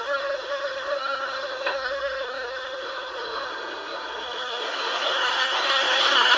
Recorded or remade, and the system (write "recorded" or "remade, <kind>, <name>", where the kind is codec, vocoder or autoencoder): remade, codec, SNAC